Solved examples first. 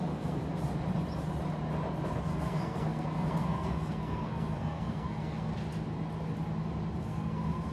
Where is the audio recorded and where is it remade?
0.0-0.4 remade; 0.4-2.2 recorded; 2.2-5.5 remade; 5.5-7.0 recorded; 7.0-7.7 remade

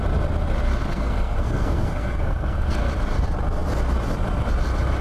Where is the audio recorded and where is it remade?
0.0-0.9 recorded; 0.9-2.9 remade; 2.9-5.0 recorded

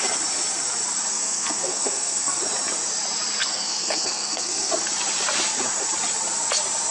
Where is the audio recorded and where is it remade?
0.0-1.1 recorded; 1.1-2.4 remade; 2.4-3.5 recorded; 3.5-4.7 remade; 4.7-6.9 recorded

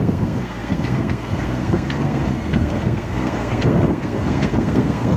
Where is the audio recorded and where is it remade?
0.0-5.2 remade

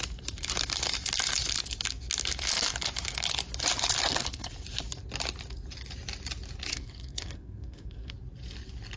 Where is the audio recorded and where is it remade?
0.0-4.0 recorded; 4.0-4.5 remade; 4.5-6.7 recorded; 6.7-8.1 remade; 8.1-9.0 recorded